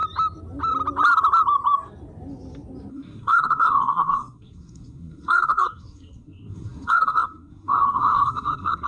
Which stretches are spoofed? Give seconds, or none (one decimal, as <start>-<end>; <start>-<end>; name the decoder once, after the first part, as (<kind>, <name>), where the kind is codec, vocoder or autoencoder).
2.9-8.9 (codec, SNAC)